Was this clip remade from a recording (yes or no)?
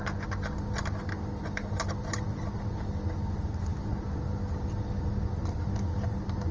no